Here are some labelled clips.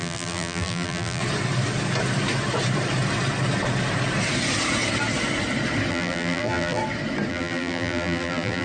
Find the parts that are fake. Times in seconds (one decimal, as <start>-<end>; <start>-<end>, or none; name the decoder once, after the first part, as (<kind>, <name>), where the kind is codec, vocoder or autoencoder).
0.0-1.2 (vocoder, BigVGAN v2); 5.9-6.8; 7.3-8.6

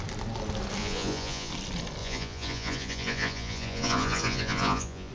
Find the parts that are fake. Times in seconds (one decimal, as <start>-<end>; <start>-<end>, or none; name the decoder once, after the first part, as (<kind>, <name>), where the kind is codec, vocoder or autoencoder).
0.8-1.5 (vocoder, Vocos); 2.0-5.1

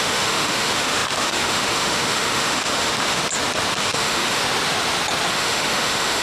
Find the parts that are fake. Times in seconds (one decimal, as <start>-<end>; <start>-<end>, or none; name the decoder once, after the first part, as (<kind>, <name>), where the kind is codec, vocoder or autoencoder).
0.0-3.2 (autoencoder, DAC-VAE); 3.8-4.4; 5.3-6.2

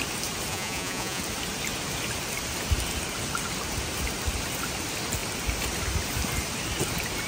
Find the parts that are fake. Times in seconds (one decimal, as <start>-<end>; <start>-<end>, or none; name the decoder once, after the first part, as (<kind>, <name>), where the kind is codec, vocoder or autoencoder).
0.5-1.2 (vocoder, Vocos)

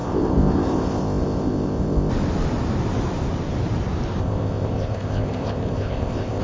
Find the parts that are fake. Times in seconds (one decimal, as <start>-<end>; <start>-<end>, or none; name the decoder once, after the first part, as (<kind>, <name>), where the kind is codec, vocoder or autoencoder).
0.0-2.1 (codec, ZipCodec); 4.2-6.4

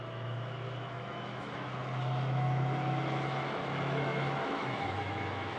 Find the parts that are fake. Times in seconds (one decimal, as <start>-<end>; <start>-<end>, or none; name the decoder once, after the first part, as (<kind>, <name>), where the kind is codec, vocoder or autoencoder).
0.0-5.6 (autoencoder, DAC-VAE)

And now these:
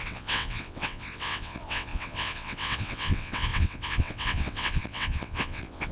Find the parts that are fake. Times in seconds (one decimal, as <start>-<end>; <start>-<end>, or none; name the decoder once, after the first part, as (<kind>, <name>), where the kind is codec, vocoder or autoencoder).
0.0-5.9 (vocoder, WaveNeXt)